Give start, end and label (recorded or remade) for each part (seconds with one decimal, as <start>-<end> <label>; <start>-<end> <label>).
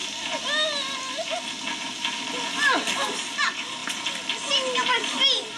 0.0-5.6 recorded